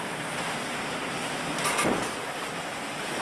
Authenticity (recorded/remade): recorded